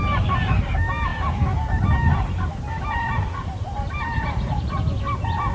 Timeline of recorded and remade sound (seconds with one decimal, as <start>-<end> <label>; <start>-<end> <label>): 0.0-5.5 recorded